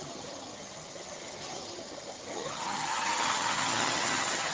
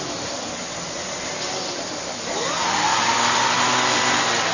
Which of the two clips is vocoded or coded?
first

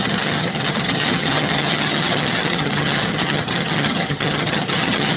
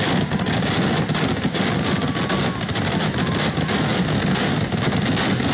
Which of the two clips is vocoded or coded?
first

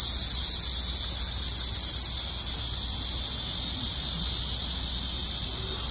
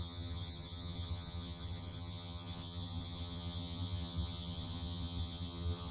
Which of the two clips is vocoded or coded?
second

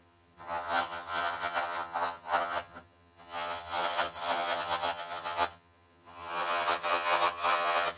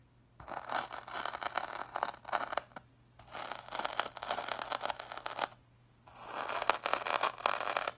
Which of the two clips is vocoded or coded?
first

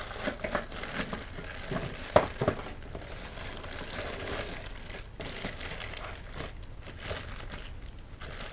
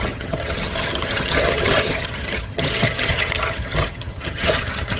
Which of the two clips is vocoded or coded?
second